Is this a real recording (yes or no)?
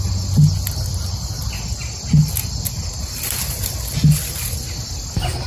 yes